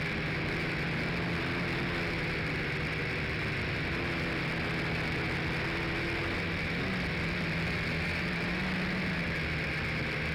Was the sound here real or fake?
real